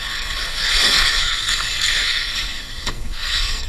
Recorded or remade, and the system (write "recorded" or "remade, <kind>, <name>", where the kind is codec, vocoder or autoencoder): remade, codec, SNAC